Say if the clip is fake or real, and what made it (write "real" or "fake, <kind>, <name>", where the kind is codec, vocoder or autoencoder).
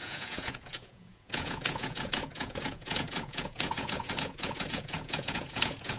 fake, vocoder, Vocos